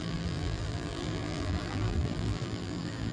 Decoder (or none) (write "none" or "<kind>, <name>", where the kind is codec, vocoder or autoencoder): vocoder, BigVGAN v2